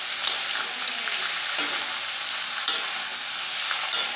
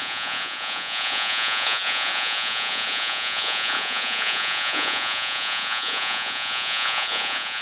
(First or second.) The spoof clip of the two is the second